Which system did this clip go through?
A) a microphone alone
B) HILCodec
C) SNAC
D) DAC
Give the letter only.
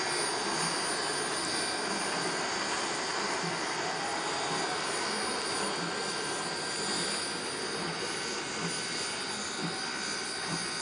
A